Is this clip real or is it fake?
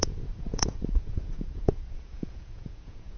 fake